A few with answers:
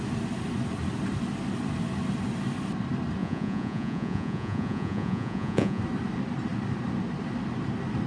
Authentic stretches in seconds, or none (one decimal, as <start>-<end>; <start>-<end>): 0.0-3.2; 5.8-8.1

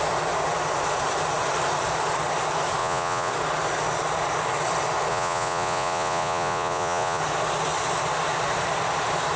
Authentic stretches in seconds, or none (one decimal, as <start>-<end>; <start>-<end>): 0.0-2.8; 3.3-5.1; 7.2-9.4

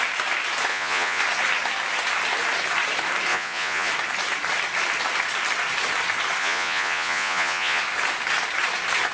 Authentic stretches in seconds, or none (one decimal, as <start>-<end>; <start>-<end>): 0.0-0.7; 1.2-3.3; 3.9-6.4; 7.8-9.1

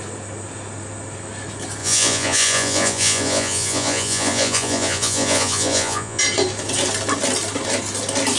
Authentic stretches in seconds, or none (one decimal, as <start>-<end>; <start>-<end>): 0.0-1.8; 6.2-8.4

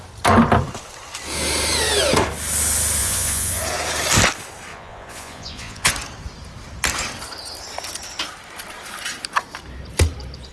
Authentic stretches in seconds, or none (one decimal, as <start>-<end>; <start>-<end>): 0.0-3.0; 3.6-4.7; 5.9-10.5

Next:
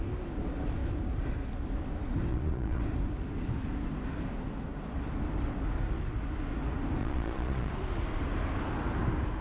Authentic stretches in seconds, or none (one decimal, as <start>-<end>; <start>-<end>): 0.0-2.3; 2.8-7.0; 7.7-9.4

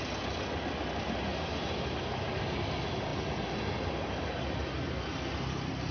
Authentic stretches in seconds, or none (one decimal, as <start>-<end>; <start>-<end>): 0.0-5.9

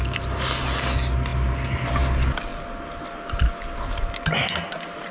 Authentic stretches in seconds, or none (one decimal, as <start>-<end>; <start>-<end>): 0.0-5.1